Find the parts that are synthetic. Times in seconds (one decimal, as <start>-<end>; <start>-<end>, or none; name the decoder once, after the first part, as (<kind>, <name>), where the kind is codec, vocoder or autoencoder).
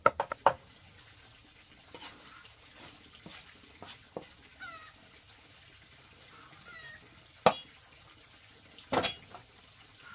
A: none